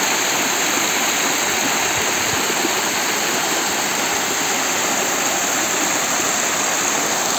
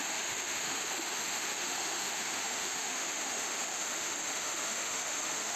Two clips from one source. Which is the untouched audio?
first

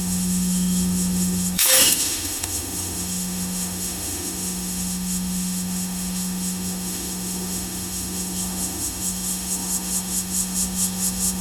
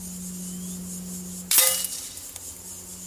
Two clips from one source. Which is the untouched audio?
second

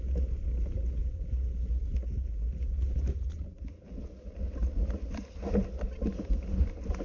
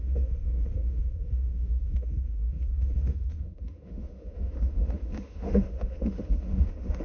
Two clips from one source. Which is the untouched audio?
first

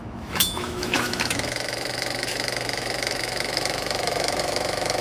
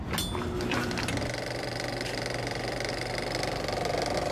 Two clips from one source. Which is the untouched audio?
second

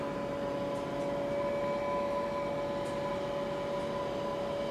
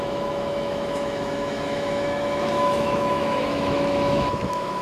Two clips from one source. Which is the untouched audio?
first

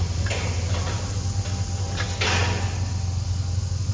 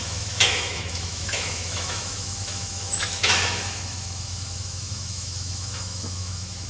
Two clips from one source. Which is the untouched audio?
first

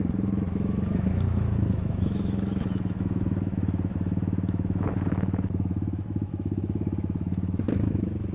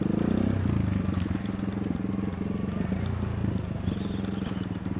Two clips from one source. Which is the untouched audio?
second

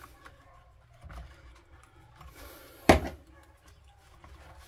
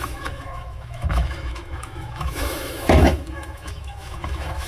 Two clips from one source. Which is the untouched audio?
first